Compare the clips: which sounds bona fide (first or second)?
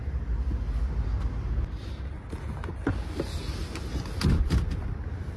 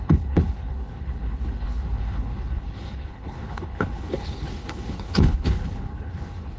first